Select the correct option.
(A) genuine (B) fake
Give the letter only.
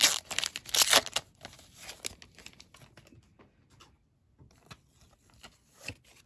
A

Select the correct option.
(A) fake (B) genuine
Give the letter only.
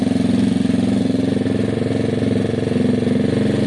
B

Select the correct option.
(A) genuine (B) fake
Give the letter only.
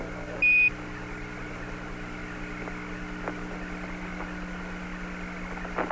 A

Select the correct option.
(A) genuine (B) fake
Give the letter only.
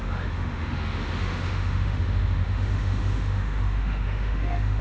B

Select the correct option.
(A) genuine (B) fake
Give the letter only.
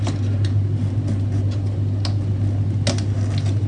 A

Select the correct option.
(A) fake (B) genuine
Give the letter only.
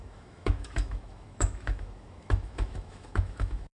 A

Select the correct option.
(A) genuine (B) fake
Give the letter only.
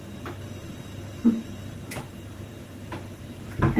B